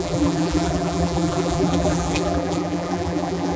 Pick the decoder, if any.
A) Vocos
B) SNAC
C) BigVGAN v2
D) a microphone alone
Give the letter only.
C